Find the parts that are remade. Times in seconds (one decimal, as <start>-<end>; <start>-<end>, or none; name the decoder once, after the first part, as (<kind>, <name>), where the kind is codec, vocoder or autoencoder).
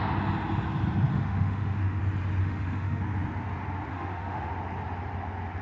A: 1.1-2.0 (autoencoder, DAC-VAE); 2.4-3.0; 3.9-4.5